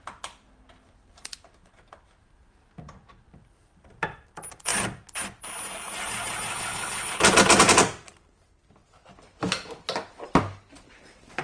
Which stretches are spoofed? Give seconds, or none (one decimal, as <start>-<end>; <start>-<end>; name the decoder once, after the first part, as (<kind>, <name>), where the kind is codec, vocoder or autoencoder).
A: 6.5-7.2 (codec, HILCodec)